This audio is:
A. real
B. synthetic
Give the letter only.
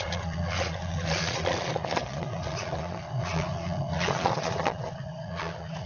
B